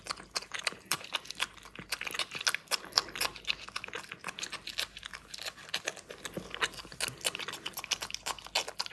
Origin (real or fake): real